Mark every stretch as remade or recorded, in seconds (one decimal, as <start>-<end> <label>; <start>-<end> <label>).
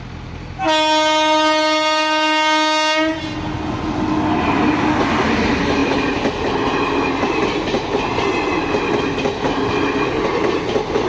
0.0-11.1 recorded